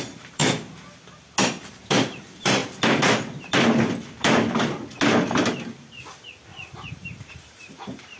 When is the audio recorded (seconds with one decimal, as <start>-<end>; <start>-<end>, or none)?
0.4-1.7; 2.6-6.9